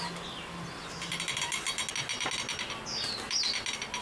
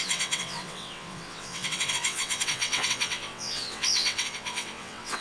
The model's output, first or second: second